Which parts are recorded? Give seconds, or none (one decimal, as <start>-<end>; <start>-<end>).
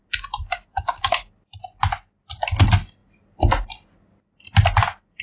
0.0-0.4; 1.2-5.2